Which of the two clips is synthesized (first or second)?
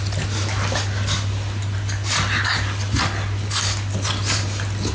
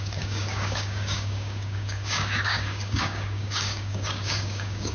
second